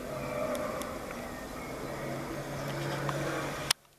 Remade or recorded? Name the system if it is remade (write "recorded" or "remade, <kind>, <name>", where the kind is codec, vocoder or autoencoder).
recorded